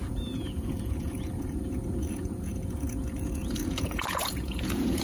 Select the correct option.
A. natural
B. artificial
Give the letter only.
B